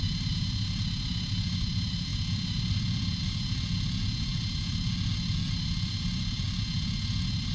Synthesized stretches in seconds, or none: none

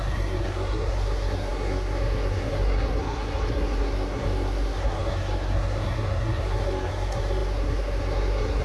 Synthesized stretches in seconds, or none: 0.0-8.6

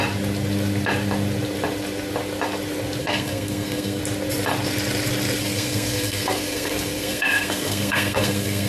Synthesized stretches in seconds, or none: 3.0-4.0; 5.4-8.7

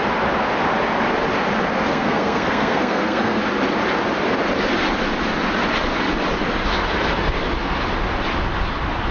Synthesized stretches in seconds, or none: 1.9-3.4

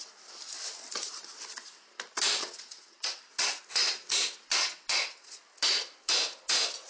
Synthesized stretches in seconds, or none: 2.4-3.2; 4.6-5.4

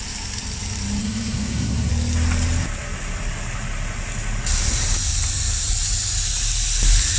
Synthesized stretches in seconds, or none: 1.0-1.9

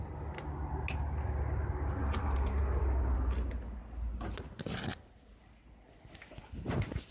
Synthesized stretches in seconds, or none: 2.0-2.6

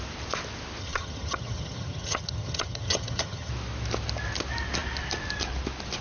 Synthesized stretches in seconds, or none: 0.8-3.5